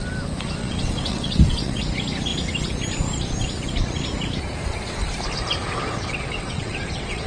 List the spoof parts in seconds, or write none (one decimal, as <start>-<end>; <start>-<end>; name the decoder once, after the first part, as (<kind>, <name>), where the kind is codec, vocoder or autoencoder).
0.6-1.8 (vocoder, WaveNeXt); 5.8-7.3